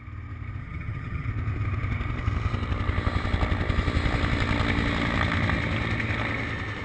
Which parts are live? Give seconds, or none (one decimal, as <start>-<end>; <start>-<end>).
0.0-0.6; 1.3-6.8